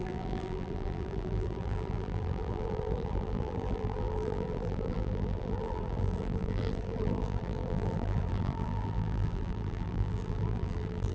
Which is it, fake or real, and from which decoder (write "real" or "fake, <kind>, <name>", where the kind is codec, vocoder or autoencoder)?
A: fake, vocoder, BigVGAN v2